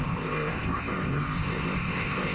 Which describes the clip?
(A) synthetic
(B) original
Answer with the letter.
A